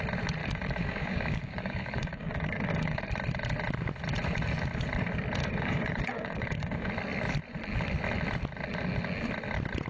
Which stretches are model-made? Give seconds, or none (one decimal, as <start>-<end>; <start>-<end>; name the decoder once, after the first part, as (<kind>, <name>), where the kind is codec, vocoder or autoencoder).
0.4-3.1 (codec, DAC); 5.4-6.9